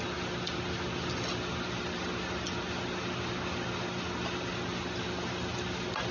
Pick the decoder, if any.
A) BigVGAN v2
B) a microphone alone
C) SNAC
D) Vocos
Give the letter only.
B